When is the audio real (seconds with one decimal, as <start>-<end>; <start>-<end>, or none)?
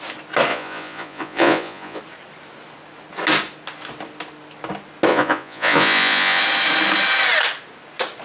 0.0-0.5; 2.0-5.1; 6.4-8.2